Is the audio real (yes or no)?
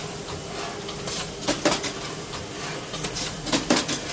yes